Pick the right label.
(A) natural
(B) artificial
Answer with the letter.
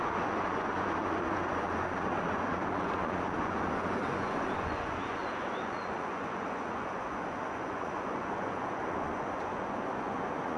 B